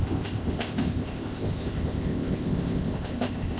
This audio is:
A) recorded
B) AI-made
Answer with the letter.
B